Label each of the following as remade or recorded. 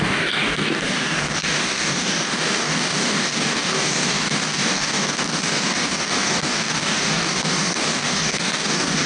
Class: remade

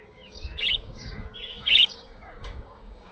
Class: remade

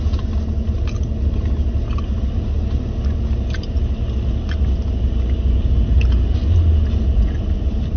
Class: recorded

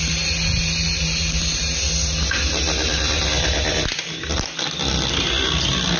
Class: recorded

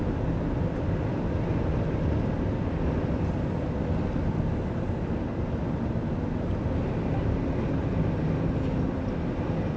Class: recorded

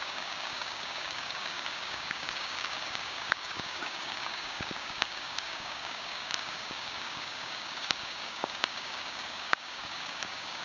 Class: remade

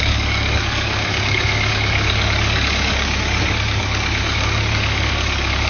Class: remade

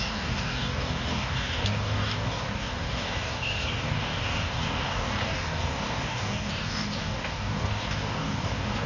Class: remade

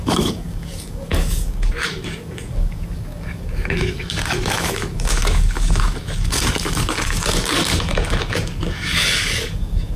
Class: remade